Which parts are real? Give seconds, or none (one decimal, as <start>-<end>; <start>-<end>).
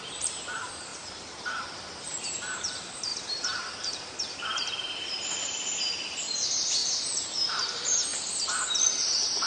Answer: 8.1-8.7